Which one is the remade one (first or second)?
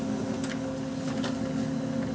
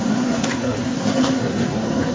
second